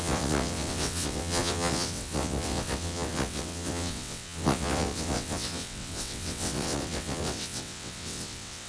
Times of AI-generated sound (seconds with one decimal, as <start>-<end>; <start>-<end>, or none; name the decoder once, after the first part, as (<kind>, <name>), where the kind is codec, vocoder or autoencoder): 0.0-8.7 (vocoder, WaveNeXt)